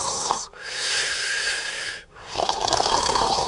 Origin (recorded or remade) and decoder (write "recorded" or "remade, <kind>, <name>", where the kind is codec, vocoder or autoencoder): remade, codec, SNAC